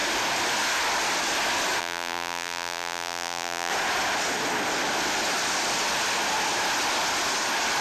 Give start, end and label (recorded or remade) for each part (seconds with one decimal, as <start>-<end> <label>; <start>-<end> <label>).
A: 0.0-1.8 recorded; 1.8-3.7 remade; 3.7-7.8 recorded